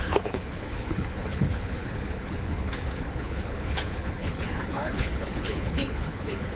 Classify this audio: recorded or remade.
remade